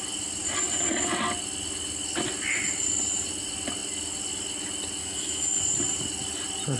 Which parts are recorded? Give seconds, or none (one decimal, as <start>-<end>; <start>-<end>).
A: 0.0-5.0; 5.6-6.8